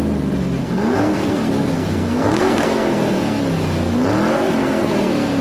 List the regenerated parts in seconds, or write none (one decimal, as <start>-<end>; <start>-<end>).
0.6-3.4; 4.3-5.4